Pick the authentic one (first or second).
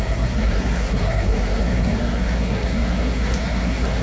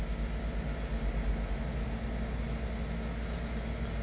second